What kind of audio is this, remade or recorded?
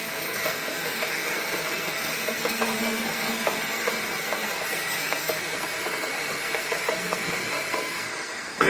remade